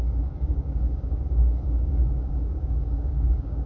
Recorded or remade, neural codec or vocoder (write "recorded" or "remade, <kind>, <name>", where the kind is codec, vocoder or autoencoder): remade, codec, DAC